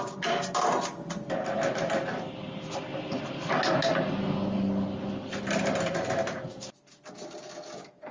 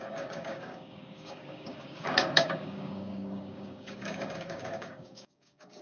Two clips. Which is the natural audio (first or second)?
first